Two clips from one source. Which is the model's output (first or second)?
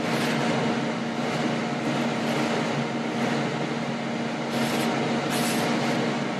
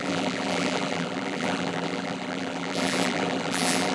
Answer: second